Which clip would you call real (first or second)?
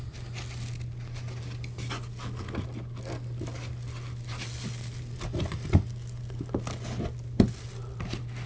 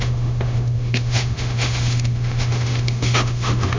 first